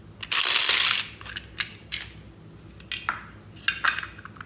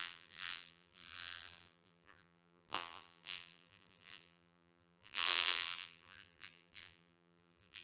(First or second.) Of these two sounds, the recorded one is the first